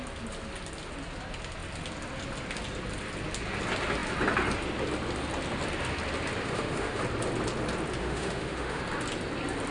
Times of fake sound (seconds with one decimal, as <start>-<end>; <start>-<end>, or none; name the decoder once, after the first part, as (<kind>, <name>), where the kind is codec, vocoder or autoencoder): 6.4-7.0 (autoencoder, DAC-VAE); 8.0-8.8